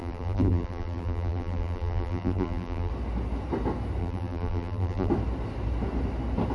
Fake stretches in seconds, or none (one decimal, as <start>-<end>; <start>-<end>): 0.0-2.9; 4.0-5.1